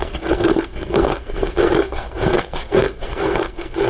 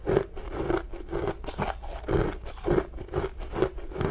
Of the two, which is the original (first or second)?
second